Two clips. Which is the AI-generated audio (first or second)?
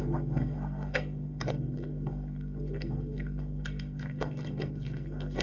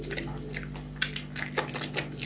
first